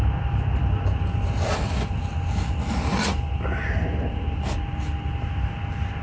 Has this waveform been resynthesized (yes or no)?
no